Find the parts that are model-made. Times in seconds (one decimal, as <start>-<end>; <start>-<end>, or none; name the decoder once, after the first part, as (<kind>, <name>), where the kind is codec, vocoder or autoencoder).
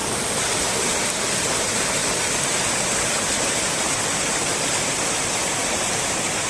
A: 1.0-2.0 (vocoder, BigVGAN v2); 3.4-6.5